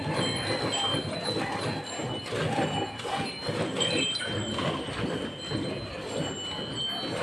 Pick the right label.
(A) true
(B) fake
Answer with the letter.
A